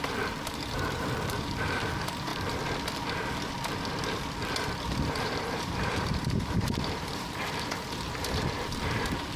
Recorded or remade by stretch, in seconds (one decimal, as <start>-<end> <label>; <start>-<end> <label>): 0.0-2.3 remade; 2.3-5.0 recorded; 5.0-9.4 remade